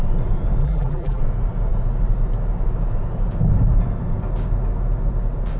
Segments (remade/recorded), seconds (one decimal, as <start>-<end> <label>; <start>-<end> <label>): 0.0-0.6 recorded; 0.6-1.2 remade; 1.2-5.6 recorded